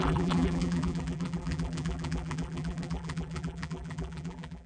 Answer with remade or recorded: remade